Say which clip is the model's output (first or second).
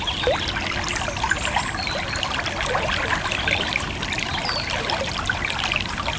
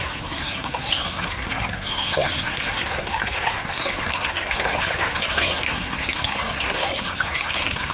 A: second